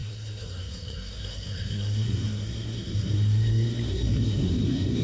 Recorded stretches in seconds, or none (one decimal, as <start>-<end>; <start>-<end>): none